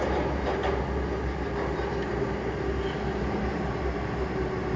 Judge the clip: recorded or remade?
recorded